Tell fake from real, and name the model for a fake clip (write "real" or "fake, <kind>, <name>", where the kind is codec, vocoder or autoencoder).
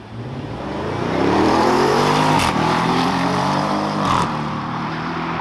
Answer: fake, vocoder, BigVGAN v2